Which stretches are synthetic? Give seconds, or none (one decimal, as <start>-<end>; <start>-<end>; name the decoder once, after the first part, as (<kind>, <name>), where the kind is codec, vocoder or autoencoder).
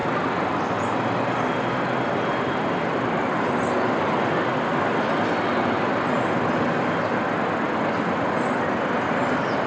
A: none